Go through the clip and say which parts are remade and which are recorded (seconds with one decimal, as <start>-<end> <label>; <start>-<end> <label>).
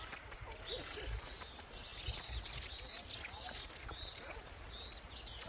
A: 0.0-5.5 recorded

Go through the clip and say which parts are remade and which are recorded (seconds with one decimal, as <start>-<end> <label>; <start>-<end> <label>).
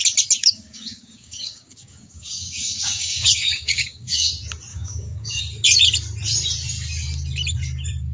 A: 0.0-0.4 recorded; 0.4-4.3 remade; 4.3-4.7 recorded; 4.7-5.4 remade; 5.4-8.1 recorded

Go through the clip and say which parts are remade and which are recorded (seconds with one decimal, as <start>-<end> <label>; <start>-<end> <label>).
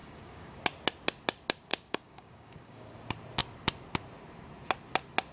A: 0.0-0.6 remade; 0.6-1.7 recorded; 1.7-2.9 remade; 2.9-5.3 recorded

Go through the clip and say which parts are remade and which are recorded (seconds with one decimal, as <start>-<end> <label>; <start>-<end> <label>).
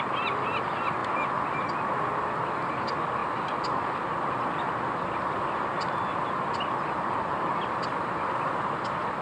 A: 0.0-5.7 recorded; 5.7-8.0 remade; 8.0-9.2 recorded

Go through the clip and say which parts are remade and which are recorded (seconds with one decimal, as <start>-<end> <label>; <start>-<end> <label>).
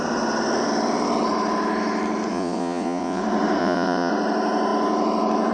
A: 0.0-2.3 recorded; 2.3-3.2 remade; 3.2-3.6 recorded; 3.6-4.1 remade; 4.1-5.5 recorded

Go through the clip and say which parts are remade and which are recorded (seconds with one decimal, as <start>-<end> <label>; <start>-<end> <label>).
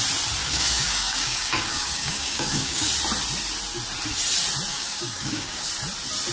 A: 0.0-0.4 recorded; 0.4-2.9 remade; 2.9-4.7 recorded; 4.7-5.7 remade; 5.7-6.3 recorded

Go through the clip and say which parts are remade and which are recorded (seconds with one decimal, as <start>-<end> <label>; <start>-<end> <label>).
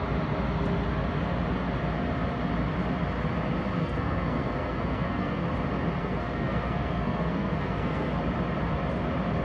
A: 0.0-3.8 recorded; 3.8-5.4 remade; 5.4-6.0 recorded; 6.0-8.2 remade; 8.2-9.4 recorded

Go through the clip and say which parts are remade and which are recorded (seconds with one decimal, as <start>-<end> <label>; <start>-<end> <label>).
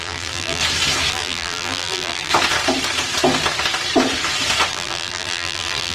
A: 0.0-0.6 remade; 0.6-1.1 recorded; 1.1-2.3 remade; 2.3-4.7 recorded; 4.7-5.9 remade